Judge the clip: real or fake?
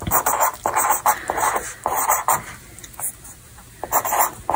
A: real